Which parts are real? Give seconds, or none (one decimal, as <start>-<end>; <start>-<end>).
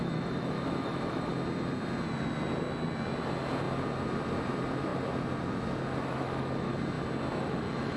1.3-6.1; 6.7-7.4